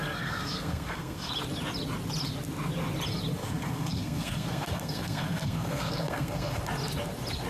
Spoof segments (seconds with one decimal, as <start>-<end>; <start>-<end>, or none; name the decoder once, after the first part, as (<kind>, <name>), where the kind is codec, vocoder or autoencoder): 0.0-1.3 (codec, SNAC); 3.4-6.6